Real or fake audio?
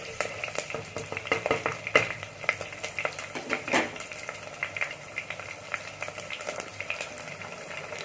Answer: fake